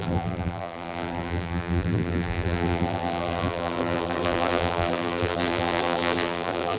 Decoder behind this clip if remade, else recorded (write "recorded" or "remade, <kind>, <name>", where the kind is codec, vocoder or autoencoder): remade, vocoder, BigVGAN v2